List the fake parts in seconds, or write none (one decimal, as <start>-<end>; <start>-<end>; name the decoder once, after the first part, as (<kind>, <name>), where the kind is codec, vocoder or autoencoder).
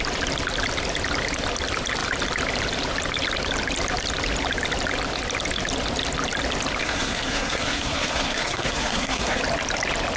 6.8-9.4 (codec, SNAC)